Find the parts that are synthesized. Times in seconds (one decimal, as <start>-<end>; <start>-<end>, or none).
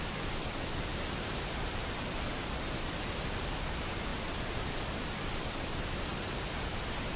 0.9-3.5; 6.1-6.7